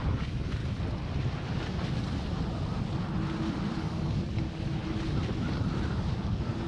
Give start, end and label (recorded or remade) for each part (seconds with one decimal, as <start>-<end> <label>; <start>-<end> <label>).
0.0-0.6 remade; 0.6-3.7 recorded; 3.7-4.8 remade; 4.8-5.9 recorded; 5.9-6.7 remade